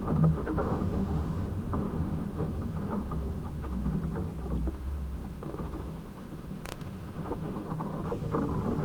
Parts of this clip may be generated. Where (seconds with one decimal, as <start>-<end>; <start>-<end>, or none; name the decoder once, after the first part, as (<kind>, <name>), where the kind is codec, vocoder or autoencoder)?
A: 0.0-4.0 (autoencoder, DAC-VAE); 4.7-8.0